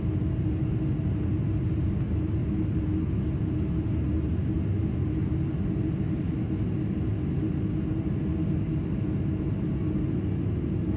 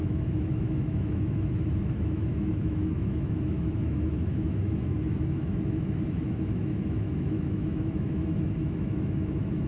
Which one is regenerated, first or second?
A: second